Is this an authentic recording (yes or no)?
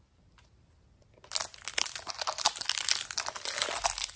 yes